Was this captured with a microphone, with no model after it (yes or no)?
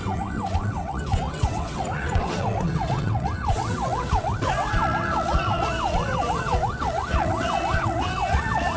no